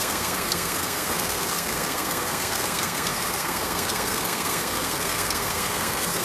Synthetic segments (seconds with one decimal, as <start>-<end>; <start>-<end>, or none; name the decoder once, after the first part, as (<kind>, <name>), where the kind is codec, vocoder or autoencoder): 0.0-6.2 (codec, SNAC)